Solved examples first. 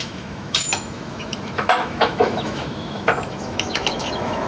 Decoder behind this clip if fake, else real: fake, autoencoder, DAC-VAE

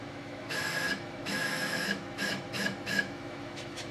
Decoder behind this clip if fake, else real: fake, autoencoder, DAC-VAE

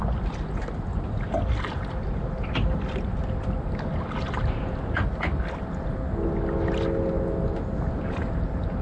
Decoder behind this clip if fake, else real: real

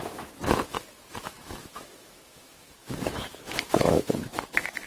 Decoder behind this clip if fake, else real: fake, autoencoder, DAC-VAE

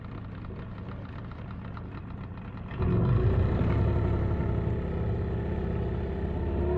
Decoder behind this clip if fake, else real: real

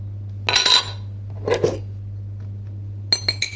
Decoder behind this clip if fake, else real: real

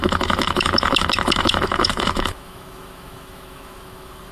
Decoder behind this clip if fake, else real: fake, autoencoder, DAC-VAE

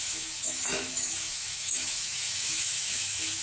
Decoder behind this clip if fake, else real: fake, autoencoder, DAC-VAE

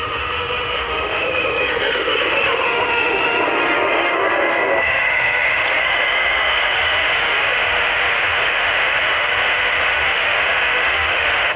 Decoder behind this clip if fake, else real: fake, autoencoder, DAC-VAE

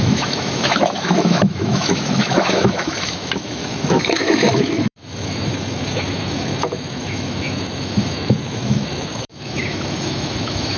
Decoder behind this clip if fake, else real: fake, autoencoder, DAC-VAE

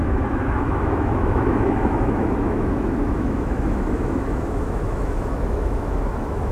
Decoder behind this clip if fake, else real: fake, autoencoder, DAC-VAE